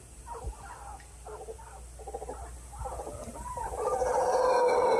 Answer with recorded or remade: recorded